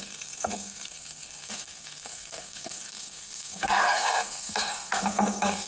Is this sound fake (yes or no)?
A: yes